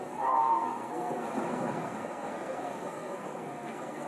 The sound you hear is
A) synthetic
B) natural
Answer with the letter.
A